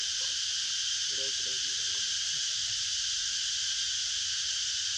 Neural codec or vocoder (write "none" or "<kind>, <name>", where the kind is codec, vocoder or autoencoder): none